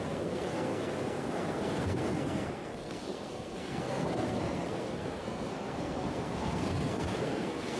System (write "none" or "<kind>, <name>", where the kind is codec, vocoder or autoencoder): codec, SNAC